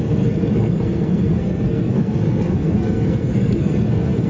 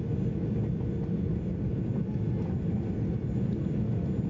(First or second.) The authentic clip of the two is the second